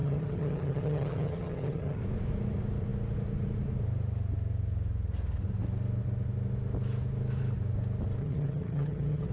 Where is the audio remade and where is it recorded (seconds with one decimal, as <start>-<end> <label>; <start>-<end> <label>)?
0.0-2.0 remade; 2.0-8.2 recorded; 8.2-9.3 remade